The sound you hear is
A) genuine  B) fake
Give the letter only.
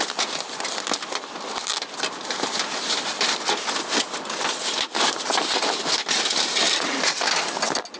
A